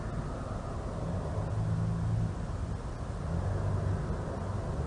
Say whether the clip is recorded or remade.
recorded